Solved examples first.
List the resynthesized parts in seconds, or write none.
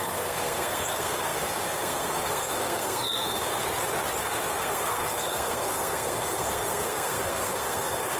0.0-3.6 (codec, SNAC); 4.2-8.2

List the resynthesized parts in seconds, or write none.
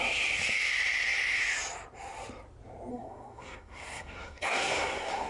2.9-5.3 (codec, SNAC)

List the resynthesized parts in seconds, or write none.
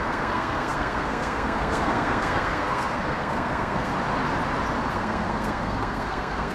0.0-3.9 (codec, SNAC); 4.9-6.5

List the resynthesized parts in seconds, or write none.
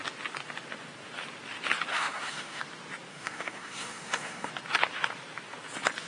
1.9-2.6 (codec, SNAC); 3.1-4.5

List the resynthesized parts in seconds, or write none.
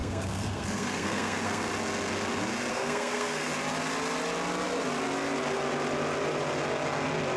0.0-1.7 (codec, SNAC); 2.7-3.5